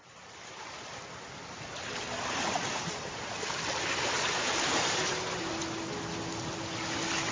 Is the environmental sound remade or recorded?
recorded